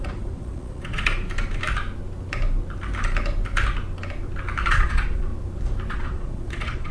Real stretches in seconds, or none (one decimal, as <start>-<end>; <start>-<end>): 1.1-4.7; 5.3-5.9

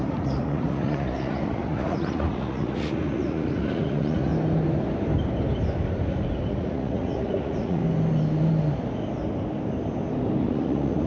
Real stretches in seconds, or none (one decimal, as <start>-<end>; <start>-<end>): 4.3-6.5; 7.8-10.4

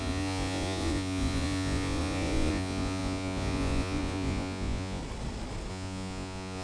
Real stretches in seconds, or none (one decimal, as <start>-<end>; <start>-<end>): 5.0-5.7

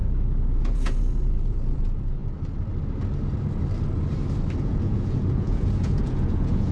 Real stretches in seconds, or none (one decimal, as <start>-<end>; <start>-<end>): 0.0-0.6; 2.2-4.6

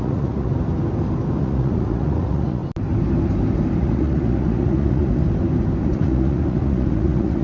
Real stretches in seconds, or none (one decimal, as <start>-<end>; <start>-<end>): 0.5-1.4; 2.6-3.8; 5.2-5.8

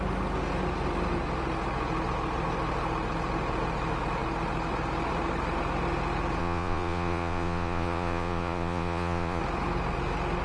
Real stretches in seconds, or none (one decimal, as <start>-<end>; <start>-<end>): 0.0-6.4; 9.4-10.4